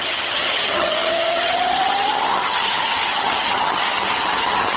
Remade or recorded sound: remade